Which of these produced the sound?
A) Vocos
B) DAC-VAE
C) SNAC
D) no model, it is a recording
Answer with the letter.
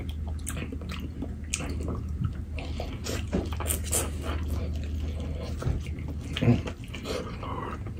D